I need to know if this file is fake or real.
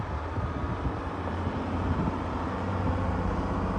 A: fake